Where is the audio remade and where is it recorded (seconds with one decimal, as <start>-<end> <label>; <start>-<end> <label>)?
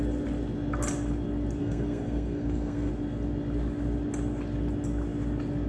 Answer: 0.0-1.6 recorded; 1.6-2.9 remade; 2.9-5.7 recorded